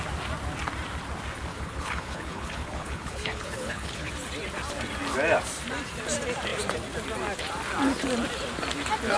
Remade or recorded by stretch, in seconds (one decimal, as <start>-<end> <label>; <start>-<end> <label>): 0.0-1.5 recorded; 1.5-4.1 remade; 4.1-9.2 recorded